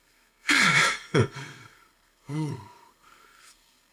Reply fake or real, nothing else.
fake